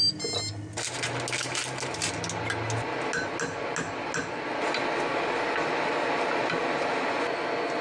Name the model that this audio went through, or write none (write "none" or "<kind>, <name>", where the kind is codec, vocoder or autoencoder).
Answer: none